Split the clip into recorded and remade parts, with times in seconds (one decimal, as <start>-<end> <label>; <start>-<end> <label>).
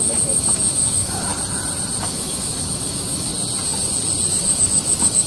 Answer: 0.0-1.3 remade; 1.3-2.0 recorded; 2.0-3.3 remade; 3.3-4.3 recorded; 4.3-5.3 remade